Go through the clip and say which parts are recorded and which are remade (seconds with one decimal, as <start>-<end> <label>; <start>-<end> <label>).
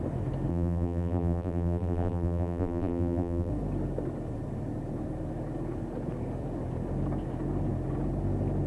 0.0-0.5 recorded; 0.5-3.5 remade; 3.5-8.7 recorded